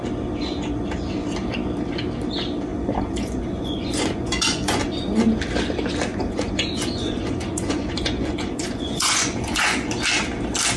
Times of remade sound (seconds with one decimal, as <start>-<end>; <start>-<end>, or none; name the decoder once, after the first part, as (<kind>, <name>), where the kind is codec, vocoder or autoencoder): 2.7-4.8 (vocoder, Vocos); 6.1-9.9